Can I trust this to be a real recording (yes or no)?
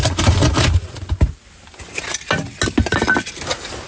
yes